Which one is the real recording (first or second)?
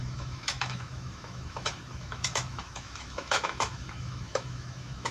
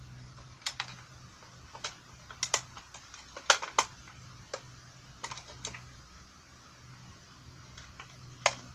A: second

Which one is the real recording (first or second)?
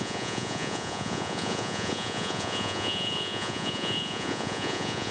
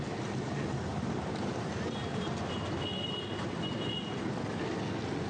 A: second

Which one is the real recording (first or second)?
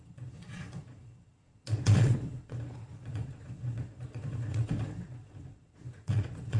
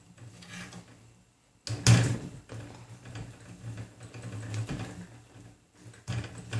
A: second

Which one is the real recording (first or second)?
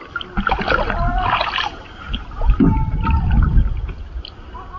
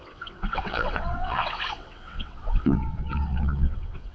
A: first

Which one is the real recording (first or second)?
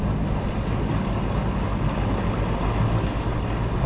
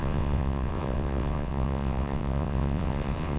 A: first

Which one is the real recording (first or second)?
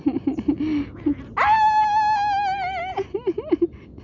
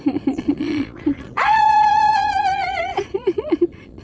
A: first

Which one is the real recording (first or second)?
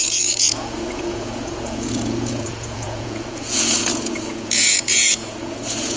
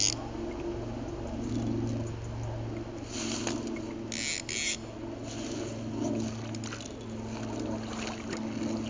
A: second